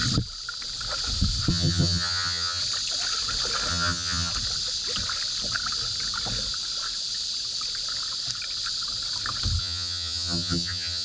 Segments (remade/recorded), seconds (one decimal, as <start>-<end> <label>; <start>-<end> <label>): 0.0-1.5 recorded; 1.5-2.6 remade; 2.6-3.7 recorded; 3.7-4.3 remade; 4.3-9.6 recorded; 9.6-11.0 remade

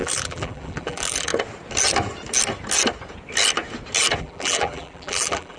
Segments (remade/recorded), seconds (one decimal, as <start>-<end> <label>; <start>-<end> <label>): 0.0-1.3 remade; 1.3-4.2 recorded; 4.2-5.6 remade

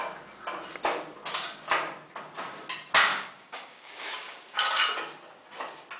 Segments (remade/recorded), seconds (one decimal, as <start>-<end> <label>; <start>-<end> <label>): 0.0-3.1 recorded; 3.1-4.7 remade; 4.7-6.0 recorded

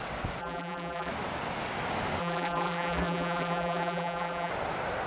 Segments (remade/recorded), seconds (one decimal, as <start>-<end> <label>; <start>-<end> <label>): 0.0-0.4 recorded; 0.4-1.1 remade; 1.1-2.2 recorded; 2.2-4.5 remade; 4.5-5.1 recorded